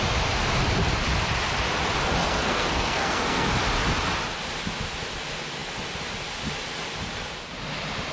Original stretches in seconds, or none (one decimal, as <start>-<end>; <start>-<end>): 0.0-2.2; 3.5-8.1